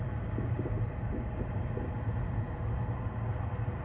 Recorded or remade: recorded